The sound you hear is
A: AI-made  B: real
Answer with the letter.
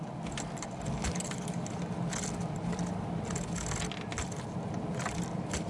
B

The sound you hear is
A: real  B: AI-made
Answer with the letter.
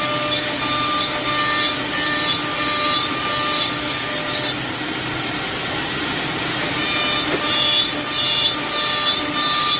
A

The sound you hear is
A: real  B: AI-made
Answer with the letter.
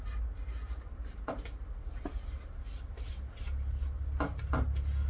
A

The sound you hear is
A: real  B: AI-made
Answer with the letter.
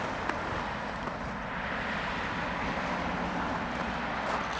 A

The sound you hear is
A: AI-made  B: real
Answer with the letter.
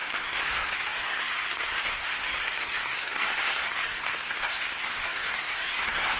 A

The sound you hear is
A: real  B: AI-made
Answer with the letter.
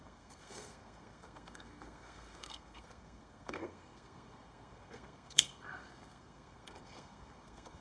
B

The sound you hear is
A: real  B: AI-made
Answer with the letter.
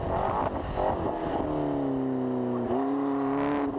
A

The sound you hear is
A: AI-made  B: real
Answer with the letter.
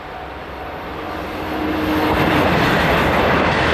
B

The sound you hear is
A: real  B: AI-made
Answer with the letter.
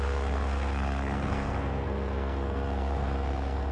B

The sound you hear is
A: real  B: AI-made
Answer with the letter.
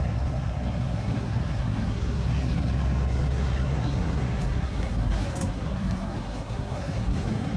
B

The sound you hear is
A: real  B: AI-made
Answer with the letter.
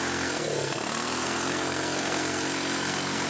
B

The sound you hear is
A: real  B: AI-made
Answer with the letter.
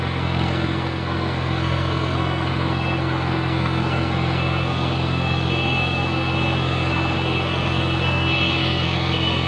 B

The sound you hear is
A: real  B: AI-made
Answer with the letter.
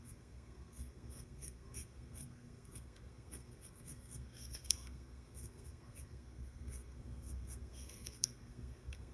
B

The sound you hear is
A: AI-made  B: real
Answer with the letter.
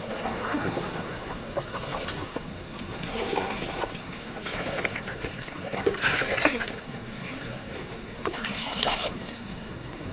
A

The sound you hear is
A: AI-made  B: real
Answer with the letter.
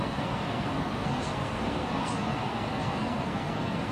A